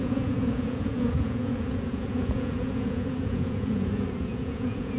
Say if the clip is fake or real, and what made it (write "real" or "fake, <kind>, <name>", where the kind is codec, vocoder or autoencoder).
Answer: fake, vocoder, Vocos